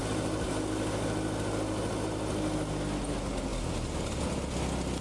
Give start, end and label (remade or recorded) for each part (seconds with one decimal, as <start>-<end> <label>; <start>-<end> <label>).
0.0-5.0 recorded